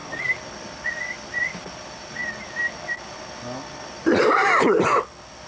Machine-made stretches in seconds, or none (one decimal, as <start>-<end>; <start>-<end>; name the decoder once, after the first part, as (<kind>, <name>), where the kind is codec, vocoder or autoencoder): none